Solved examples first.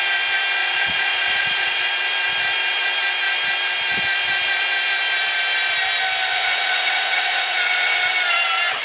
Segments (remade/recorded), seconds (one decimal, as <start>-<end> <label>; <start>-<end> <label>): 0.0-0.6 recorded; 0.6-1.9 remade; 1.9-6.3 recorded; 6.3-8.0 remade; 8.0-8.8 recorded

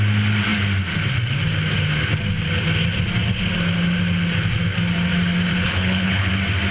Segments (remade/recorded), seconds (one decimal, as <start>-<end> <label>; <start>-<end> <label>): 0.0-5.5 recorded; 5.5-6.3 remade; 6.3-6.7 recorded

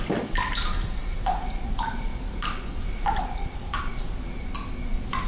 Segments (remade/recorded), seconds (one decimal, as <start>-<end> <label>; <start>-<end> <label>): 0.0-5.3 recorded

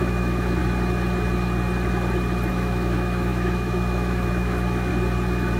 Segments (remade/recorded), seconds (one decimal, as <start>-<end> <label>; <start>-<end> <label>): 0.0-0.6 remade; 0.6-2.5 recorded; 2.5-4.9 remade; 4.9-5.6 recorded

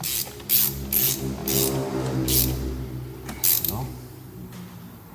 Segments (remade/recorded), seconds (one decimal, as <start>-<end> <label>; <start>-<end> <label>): 0.0-5.1 recorded